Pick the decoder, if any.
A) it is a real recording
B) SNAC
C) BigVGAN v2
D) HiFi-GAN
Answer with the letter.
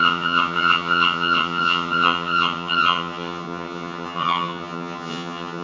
D